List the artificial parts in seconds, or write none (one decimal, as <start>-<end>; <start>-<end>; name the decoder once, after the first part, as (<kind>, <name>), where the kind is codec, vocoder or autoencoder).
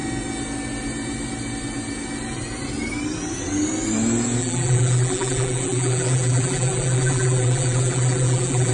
4.4-8.7 (vocoder, BigVGAN v2)